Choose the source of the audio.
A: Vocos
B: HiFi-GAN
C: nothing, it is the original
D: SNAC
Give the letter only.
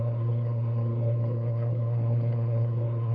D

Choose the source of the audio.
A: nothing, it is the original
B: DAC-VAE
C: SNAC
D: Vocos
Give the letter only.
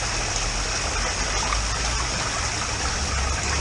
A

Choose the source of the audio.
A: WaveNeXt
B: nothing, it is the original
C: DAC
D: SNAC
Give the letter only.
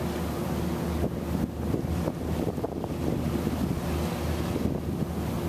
B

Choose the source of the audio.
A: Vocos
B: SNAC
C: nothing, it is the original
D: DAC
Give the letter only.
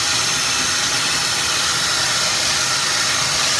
C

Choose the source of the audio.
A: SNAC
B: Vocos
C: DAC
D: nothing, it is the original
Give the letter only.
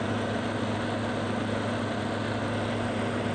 D